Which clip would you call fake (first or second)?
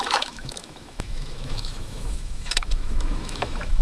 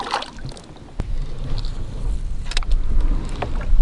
first